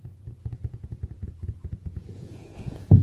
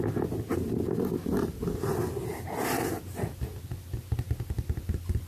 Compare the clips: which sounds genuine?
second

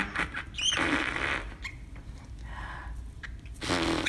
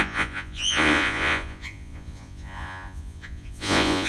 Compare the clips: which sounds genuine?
first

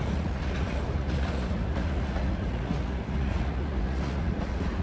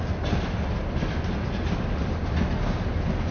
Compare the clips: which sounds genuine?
second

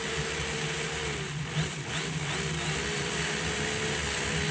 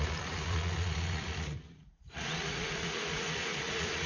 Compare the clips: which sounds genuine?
first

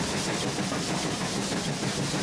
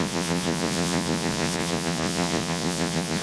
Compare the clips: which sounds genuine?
first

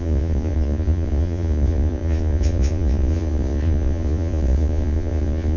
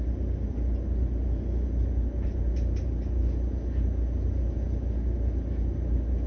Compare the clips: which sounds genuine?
second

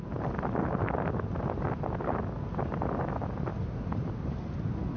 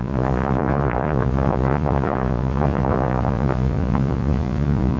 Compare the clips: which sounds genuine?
first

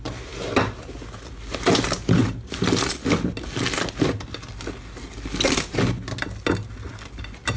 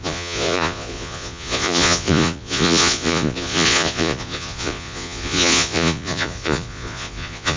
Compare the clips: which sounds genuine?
first